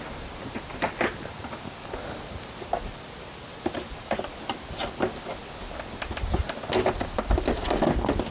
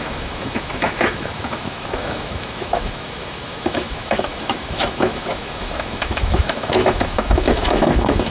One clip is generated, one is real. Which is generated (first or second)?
second